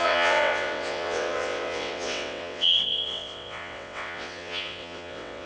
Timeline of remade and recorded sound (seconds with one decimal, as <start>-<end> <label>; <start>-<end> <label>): 0.0-5.5 remade

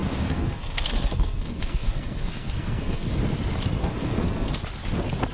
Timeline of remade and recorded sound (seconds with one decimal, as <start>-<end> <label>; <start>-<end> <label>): 0.0-3.2 remade; 3.2-3.8 recorded; 3.8-4.6 remade; 4.6-5.3 recorded

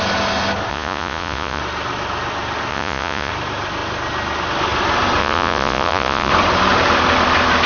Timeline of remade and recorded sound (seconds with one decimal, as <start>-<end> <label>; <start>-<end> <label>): 0.0-0.7 recorded; 0.7-1.6 remade; 1.6-2.7 recorded; 2.7-3.3 remade; 3.3-5.2 recorded; 5.2-6.3 remade; 6.3-7.7 recorded

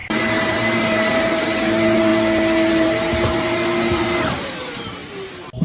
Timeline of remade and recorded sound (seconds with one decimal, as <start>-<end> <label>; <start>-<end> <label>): 0.0-2.1 remade; 2.1-2.7 recorded; 2.7-5.0 remade; 5.0-5.6 recorded

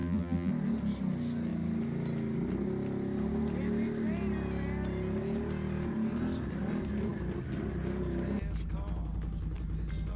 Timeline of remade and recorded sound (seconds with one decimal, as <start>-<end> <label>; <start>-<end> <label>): 0.0-0.5 remade; 0.5-10.2 recorded

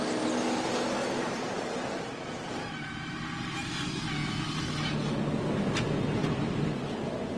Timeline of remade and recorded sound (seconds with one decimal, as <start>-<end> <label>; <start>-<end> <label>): 0.0-1.0 recorded; 1.0-3.2 remade; 3.2-6.2 recorded; 6.2-7.4 remade

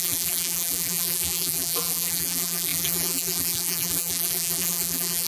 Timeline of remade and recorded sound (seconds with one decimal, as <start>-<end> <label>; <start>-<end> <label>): 0.0-5.3 remade